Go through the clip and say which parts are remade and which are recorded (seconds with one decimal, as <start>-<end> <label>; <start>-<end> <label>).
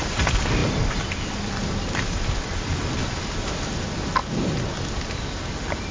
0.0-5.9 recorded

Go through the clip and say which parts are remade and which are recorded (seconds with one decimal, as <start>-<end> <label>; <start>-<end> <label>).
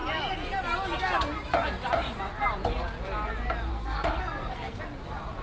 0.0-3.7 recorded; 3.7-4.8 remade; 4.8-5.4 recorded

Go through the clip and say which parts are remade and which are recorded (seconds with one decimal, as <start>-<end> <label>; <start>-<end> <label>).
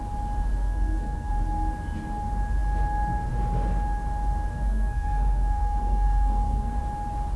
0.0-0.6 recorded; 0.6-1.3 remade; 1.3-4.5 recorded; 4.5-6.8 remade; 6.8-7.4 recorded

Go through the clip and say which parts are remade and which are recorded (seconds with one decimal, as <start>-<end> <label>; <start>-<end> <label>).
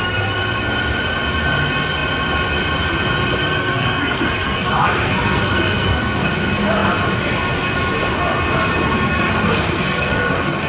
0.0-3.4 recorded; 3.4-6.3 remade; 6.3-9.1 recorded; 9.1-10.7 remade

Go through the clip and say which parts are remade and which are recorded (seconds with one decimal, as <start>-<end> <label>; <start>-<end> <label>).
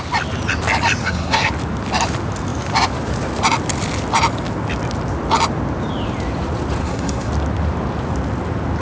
0.0-1.0 recorded; 1.0-1.5 remade; 1.5-6.8 recorded; 6.8-7.3 remade; 7.3-8.8 recorded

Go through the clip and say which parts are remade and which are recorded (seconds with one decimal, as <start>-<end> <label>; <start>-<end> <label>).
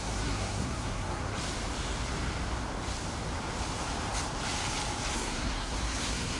0.0-1.3 remade; 1.3-5.1 recorded; 5.1-6.4 remade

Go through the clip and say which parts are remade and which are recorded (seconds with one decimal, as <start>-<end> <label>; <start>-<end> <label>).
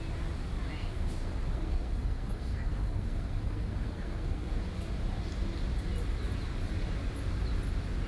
0.0-0.8 recorded; 0.8-4.6 remade; 4.6-8.1 recorded